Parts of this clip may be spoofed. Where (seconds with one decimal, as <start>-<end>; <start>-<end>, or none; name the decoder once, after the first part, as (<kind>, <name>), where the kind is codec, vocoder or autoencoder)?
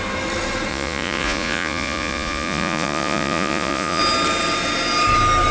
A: 0.7-4.0 (vocoder, Vocos)